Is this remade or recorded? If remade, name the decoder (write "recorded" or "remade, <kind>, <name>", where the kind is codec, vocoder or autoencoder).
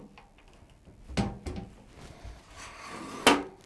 recorded